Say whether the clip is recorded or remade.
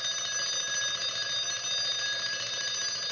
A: recorded